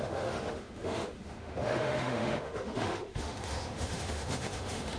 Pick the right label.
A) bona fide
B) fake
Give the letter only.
B